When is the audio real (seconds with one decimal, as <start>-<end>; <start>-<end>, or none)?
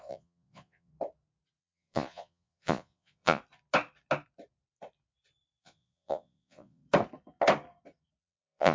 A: 0.9-1.6; 3.4-5.6; 6.8-8.2